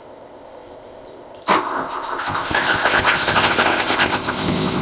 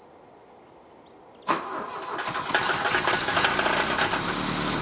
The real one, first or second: second